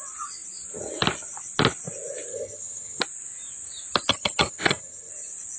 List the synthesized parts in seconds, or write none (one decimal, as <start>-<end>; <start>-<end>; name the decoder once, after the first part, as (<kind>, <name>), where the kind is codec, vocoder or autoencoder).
2.3-3.0 (vocoder, HiFi-GAN); 4.1-5.1